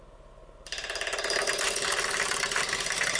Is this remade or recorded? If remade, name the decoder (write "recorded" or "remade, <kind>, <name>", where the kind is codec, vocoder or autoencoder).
recorded